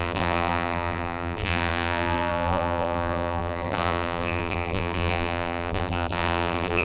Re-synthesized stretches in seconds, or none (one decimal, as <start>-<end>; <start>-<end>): 0.0-6.8

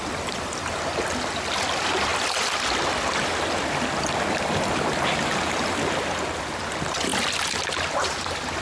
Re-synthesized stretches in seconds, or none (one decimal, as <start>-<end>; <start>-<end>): none